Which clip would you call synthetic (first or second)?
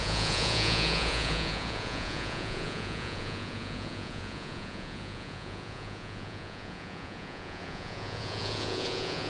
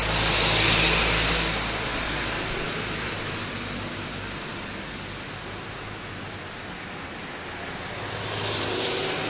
first